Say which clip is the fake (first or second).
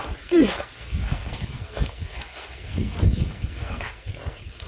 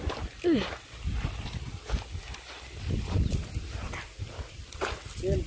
first